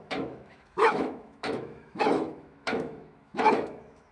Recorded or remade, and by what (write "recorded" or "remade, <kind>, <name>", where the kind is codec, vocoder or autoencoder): remade, autoencoder, DAC-VAE